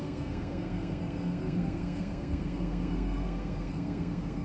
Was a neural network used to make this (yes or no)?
yes